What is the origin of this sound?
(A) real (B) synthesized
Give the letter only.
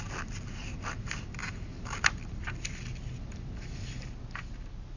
A